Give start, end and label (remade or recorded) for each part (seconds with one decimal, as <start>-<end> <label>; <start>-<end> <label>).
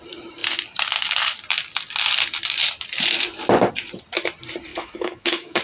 0.0-4.7 recorded; 4.7-5.6 remade